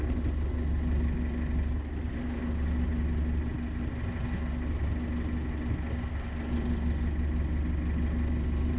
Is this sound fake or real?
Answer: real